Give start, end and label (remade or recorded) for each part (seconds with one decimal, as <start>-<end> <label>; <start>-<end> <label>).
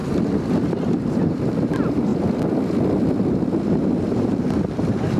0.0-2.1 remade; 2.1-4.0 recorded; 4.0-5.2 remade